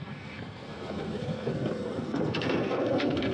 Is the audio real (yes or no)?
no